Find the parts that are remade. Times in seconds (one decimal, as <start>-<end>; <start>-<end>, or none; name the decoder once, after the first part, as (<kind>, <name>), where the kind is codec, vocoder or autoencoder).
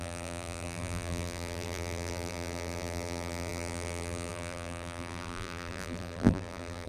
0.0-6.9 (vocoder, BigVGAN v2)